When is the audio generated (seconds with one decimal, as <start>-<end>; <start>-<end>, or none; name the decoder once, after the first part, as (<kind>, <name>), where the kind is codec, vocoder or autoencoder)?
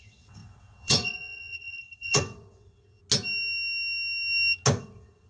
0.0-3.0 (vocoder, WaveNeXt); 4.8-5.3